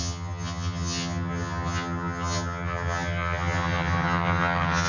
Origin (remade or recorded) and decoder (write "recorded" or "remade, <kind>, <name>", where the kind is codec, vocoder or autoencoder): remade, vocoder, HiFi-GAN